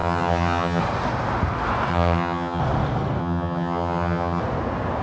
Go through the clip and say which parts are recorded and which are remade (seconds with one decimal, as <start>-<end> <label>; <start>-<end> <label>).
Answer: 0.0-0.8 remade; 0.8-1.9 recorded; 1.9-2.6 remade; 2.6-3.2 recorded; 3.2-4.4 remade; 4.4-5.0 recorded